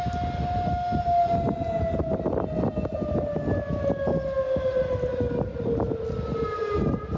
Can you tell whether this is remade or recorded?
recorded